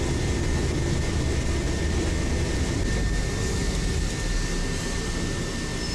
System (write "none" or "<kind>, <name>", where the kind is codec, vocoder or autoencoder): none